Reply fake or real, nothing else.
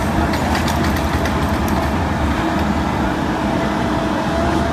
real